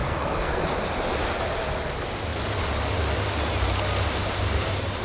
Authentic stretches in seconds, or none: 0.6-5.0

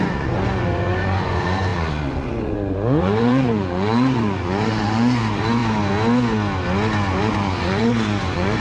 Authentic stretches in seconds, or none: 5.6-7.2